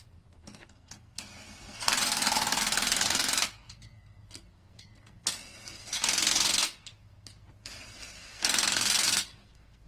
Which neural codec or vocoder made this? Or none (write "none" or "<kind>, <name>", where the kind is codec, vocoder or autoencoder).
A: codec, SNAC